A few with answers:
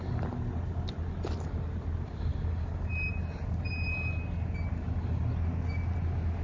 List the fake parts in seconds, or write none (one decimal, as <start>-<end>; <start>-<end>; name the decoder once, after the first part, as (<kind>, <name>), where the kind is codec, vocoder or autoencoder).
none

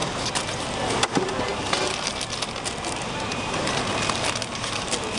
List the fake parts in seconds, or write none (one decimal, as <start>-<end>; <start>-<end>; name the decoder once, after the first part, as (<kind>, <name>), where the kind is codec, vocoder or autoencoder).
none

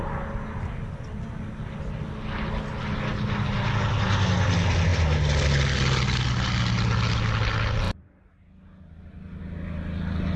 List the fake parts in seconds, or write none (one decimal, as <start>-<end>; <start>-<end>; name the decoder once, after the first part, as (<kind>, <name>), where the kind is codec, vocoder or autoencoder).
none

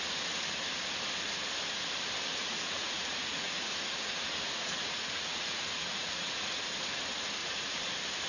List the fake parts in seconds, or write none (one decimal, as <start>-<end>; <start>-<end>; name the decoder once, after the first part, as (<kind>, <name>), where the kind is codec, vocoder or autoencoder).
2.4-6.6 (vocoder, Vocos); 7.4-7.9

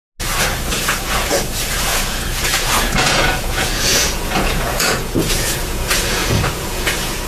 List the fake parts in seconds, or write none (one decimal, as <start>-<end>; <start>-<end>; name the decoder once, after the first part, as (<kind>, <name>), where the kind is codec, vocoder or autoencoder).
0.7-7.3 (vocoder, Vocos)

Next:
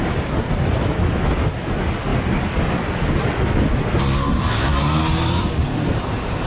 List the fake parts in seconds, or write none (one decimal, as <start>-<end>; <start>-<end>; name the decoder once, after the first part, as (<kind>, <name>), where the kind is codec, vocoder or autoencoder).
none